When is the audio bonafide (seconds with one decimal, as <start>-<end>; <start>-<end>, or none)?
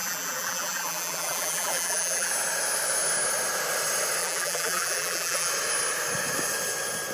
2.3-4.2; 5.5-7.1